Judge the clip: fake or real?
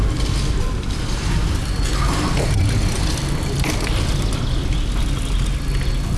real